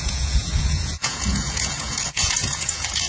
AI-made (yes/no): yes